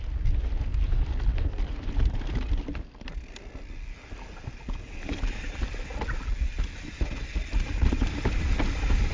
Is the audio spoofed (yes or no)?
no